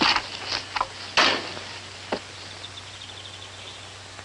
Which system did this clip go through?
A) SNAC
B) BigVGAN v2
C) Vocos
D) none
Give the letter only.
D